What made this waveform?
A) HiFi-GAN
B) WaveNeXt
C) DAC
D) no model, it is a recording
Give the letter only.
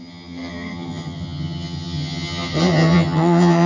A